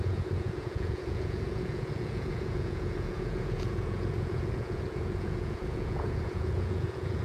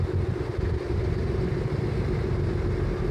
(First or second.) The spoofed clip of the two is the first